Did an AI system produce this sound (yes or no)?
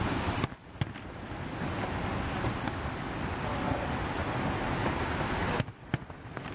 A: no